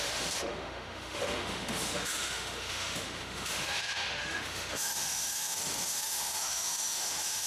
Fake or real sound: fake